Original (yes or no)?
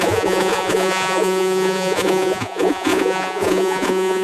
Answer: no